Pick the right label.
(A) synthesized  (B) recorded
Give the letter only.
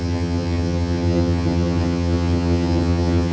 A